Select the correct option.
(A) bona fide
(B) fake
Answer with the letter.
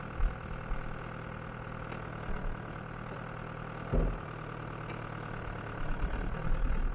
A